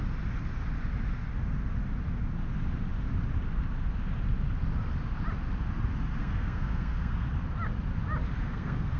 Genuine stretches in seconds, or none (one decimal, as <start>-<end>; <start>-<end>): 0.0-6.2; 7.3-8.4